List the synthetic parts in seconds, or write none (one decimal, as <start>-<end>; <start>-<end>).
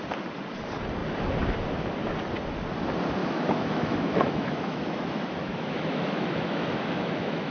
3.2-7.5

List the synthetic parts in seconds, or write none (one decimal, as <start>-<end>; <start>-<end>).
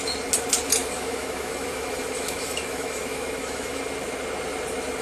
0.8-3.8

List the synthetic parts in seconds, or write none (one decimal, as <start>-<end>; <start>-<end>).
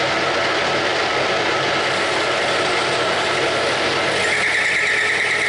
none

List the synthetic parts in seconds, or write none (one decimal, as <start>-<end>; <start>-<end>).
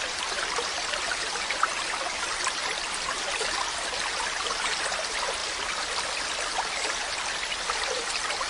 none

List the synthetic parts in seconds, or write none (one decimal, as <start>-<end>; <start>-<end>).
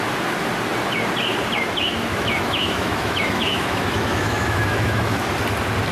2.1-5.2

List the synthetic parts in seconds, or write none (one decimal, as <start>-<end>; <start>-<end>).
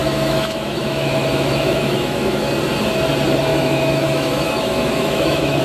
0.0-2.5; 3.5-5.6